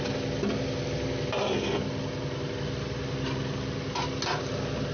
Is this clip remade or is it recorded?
recorded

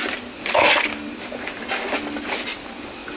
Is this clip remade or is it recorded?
recorded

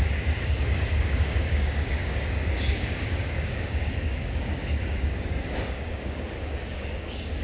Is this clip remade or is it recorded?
remade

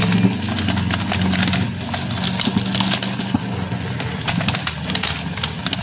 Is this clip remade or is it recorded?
recorded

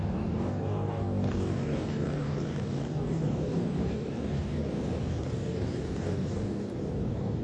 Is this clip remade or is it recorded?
remade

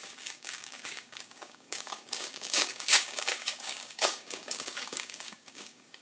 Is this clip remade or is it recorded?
remade